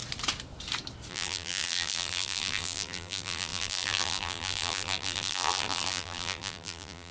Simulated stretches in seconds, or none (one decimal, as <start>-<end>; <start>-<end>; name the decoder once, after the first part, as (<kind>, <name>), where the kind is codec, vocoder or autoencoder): 1.1-7.1 (vocoder, BigVGAN v2)